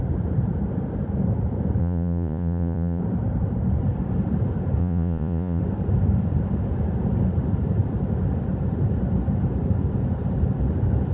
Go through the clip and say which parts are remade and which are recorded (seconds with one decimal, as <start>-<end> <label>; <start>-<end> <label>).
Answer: 0.0-1.8 recorded; 1.8-3.0 remade; 3.0-4.8 recorded; 4.8-5.6 remade; 5.6-11.1 recorded

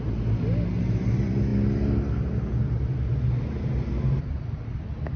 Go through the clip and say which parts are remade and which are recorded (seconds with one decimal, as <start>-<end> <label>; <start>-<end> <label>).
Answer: 0.0-5.2 recorded

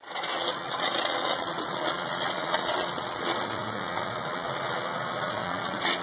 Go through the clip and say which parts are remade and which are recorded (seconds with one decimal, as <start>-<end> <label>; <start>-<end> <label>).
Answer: 0.0-6.0 remade